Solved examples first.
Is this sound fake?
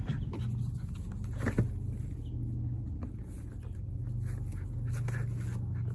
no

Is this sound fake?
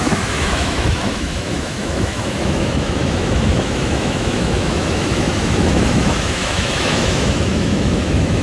yes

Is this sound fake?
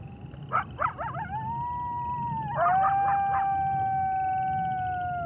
no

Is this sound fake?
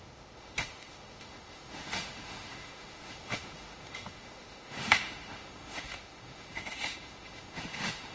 yes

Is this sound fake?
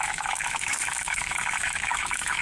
yes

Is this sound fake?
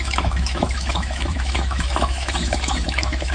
yes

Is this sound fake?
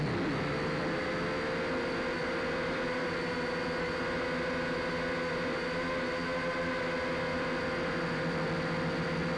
no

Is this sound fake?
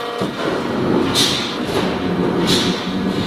no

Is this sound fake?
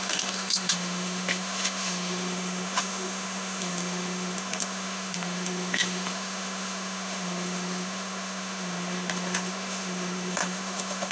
yes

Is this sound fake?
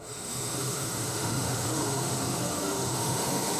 yes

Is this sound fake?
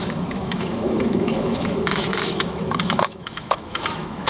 yes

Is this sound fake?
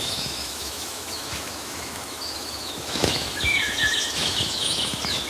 yes